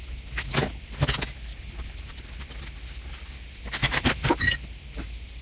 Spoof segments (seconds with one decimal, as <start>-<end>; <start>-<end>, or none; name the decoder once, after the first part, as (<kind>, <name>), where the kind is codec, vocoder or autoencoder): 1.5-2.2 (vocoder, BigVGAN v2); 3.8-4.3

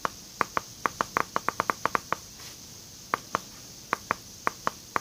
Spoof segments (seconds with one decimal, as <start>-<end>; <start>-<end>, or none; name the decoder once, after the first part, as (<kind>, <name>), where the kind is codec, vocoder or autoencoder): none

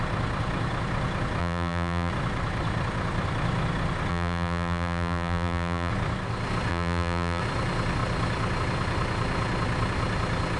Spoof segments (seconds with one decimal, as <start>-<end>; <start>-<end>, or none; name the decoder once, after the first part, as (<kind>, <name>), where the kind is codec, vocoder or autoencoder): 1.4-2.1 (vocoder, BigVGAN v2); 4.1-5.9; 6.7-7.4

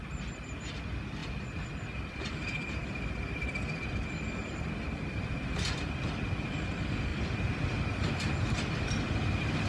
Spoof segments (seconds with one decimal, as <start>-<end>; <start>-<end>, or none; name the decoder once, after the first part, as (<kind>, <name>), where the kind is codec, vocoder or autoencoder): 1.2-6.1 (vocoder, BigVGAN v2); 7.1-9.1

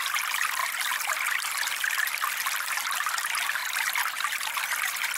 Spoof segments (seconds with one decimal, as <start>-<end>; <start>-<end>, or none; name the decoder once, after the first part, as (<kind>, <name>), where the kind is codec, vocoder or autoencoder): 0.6-2.8 (vocoder, BigVGAN v2)

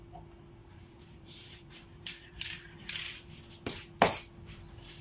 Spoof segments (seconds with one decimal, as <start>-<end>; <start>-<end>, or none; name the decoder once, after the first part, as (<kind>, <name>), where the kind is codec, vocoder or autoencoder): 0.6-3.4 (vocoder, BigVGAN v2)